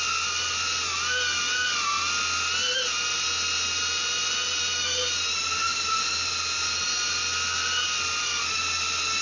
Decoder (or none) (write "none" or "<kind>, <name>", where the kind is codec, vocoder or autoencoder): none